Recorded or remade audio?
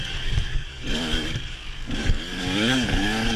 remade